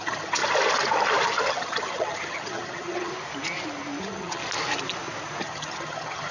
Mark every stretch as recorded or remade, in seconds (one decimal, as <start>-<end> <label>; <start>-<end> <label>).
0.0-0.4 remade; 0.4-1.4 recorded; 1.4-3.1 remade; 3.1-4.0 recorded; 4.0-4.4 remade; 4.4-5.4 recorded; 5.4-6.3 remade